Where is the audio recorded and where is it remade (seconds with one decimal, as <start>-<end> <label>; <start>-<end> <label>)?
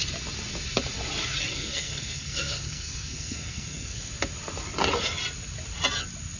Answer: 0.0-1.5 recorded; 1.5-4.1 remade; 4.1-6.4 recorded